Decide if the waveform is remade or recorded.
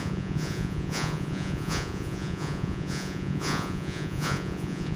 remade